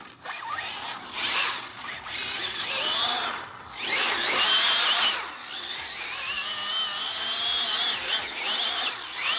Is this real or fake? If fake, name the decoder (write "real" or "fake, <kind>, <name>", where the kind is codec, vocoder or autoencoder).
real